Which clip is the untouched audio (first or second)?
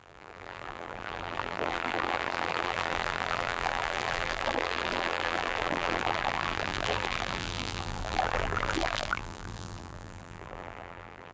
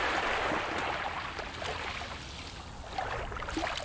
second